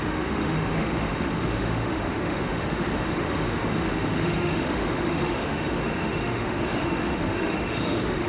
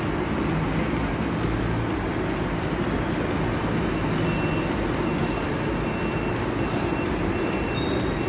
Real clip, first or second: second